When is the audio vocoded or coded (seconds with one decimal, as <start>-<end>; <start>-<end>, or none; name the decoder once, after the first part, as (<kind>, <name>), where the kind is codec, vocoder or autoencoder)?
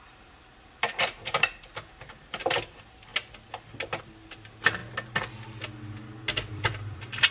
0.0-3.1 (vocoder, BigVGAN v2); 4.0-4.8; 6.5-7.3